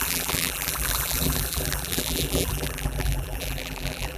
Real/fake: fake